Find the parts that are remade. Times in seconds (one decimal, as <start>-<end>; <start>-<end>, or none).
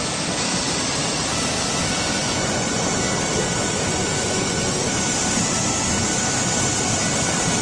2.2-2.8; 3.9-4.9